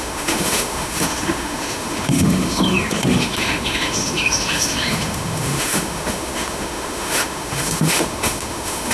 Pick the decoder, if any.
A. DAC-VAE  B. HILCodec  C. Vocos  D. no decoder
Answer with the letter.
A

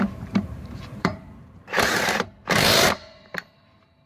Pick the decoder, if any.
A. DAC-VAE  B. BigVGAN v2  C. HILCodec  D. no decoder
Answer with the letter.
B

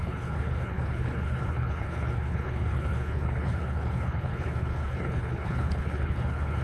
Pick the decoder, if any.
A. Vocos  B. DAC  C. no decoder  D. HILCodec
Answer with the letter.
D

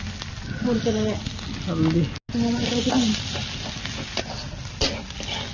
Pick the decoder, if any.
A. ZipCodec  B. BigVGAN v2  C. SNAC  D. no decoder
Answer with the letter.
D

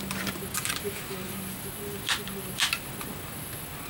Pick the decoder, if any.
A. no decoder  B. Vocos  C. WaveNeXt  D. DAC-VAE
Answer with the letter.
A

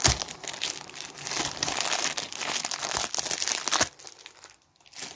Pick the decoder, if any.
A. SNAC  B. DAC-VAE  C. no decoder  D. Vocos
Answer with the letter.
C